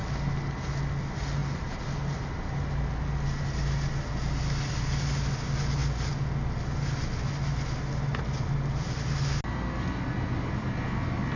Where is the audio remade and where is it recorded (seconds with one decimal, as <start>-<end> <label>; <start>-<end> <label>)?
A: 0.0-11.4 recorded